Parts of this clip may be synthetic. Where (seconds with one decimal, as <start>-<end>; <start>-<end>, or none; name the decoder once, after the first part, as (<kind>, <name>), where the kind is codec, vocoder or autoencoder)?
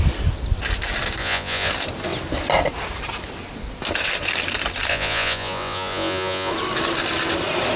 1.2-1.7 (vocoder, Vocos); 4.9-6.5